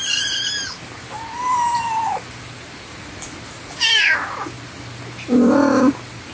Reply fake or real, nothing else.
real